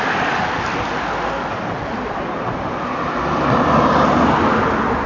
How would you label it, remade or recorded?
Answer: recorded